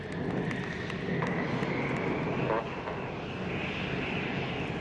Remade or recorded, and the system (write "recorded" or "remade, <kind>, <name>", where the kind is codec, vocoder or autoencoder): recorded